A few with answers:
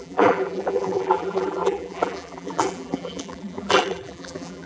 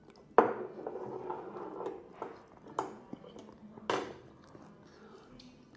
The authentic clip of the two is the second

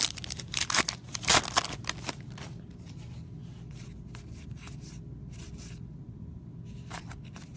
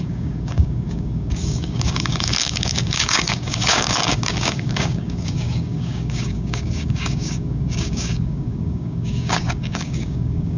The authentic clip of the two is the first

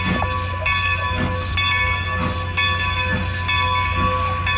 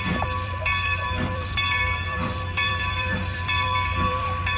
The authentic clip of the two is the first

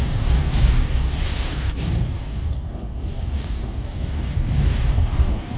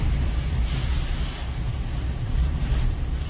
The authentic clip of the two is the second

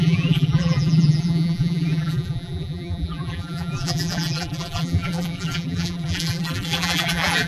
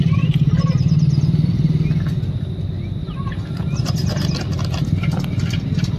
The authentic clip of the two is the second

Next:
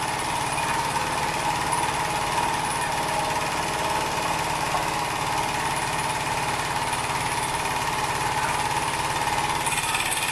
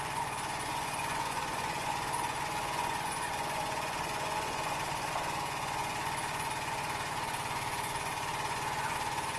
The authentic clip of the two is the first